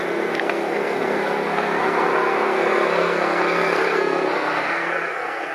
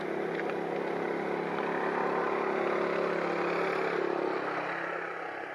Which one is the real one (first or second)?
second